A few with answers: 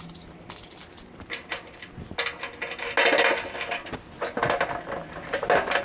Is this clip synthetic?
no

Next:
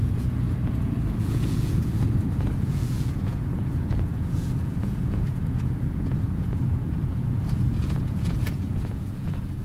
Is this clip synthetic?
yes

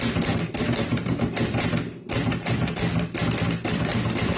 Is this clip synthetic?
no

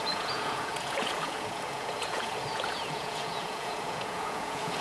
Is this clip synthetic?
yes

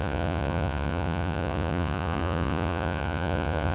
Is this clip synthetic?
yes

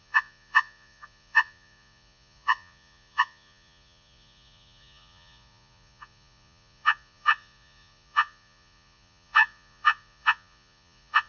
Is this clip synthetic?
yes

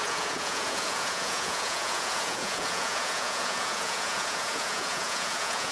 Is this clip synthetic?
yes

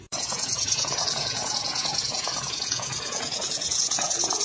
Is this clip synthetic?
yes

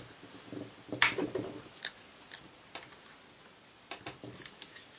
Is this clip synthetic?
no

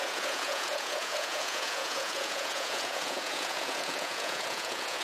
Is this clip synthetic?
yes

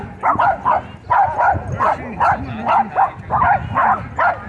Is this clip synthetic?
no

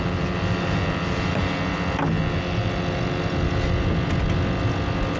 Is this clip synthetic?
no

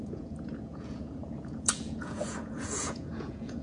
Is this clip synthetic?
yes